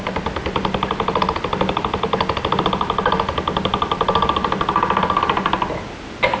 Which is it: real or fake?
real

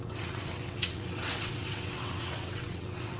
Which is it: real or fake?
fake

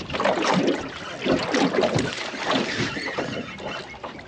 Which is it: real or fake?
real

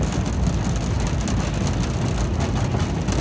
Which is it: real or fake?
real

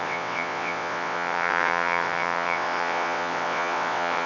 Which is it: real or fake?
fake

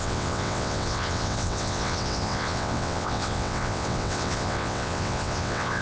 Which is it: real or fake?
fake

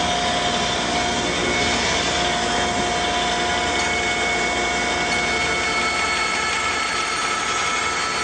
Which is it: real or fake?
real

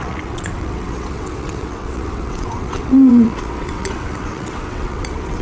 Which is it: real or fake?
fake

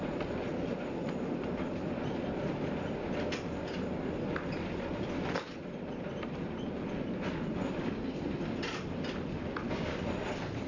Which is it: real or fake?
real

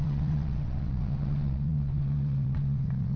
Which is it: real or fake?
fake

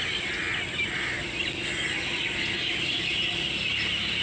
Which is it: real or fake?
real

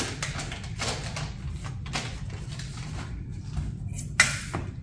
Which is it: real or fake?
real